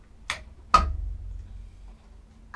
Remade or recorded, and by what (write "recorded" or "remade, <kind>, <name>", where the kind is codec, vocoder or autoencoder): recorded